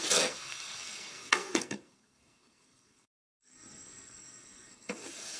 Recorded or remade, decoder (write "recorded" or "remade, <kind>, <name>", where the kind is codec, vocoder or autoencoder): remade, codec, SNAC